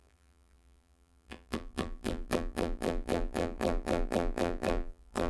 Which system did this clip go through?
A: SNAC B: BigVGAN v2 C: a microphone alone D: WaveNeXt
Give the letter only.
B